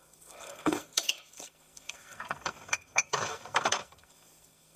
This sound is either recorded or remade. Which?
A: remade